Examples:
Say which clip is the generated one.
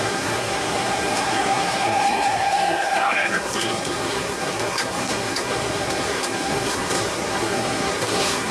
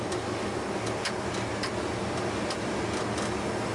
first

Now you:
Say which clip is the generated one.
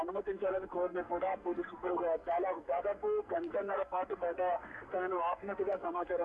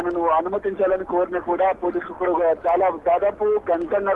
first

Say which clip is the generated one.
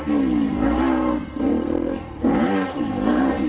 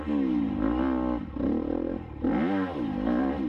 first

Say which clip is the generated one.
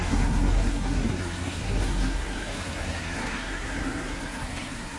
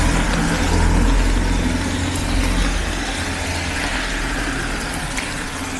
first